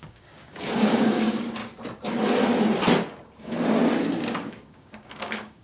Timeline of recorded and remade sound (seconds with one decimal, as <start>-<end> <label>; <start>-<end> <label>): 0.0-1.6 remade; 1.6-4.1 recorded; 4.1-5.6 remade